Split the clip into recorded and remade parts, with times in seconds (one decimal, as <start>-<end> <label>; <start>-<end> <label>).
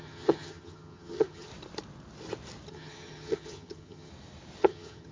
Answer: 0.0-1.5 remade; 1.5-2.7 recorded; 2.7-4.1 remade; 4.1-4.6 recorded; 4.6-5.1 remade